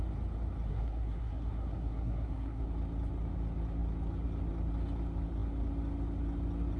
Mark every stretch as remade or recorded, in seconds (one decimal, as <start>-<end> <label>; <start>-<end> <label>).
0.0-0.7 recorded; 0.7-2.6 remade; 2.6-6.8 recorded